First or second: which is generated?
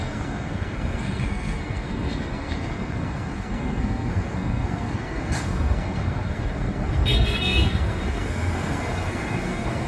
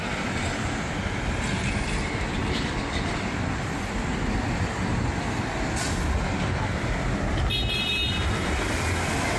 first